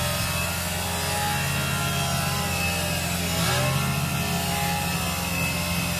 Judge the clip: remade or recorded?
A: recorded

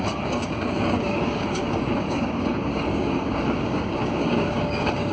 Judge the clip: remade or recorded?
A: remade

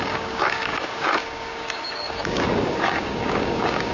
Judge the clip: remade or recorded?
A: remade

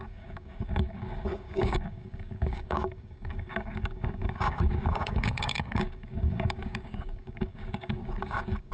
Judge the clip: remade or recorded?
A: remade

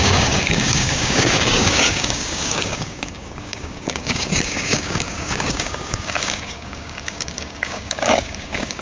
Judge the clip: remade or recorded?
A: remade